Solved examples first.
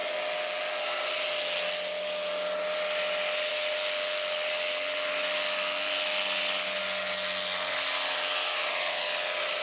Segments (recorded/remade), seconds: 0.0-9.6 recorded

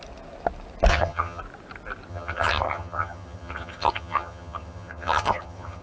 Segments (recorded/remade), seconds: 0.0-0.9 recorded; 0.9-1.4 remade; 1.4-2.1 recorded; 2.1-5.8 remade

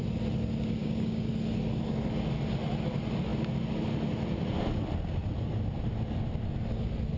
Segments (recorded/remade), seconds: 0.0-0.8 recorded; 0.8-1.3 remade; 1.3-7.2 recorded

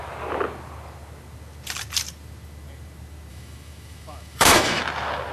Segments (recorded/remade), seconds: 0.0-3.3 recorded; 3.3-4.8 remade; 4.8-5.3 recorded

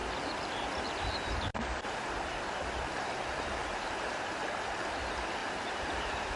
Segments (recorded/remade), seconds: 0.0-3.6 recorded; 3.6-4.3 remade; 4.3-5.4 recorded; 5.4-6.4 remade

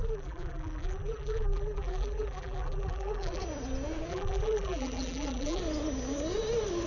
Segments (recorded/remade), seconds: 0.0-3.4 remade; 3.4-4.1 recorded; 4.1-5.6 remade; 5.6-6.9 recorded

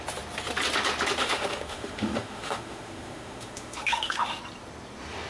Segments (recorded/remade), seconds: 0.0-1.2 recorded; 1.2-4.4 remade; 4.4-5.3 recorded